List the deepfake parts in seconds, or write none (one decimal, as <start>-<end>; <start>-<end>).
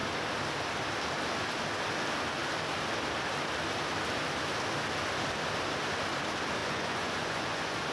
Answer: 6.6-7.9